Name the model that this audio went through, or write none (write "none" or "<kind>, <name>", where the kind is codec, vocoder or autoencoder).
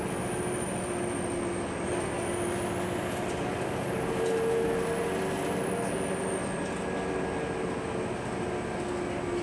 none